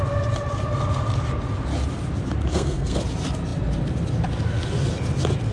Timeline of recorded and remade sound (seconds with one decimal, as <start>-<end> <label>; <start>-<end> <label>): 0.0-2.5 recorded; 2.5-3.0 remade; 3.0-5.5 recorded